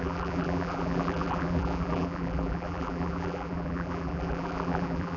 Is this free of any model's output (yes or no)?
no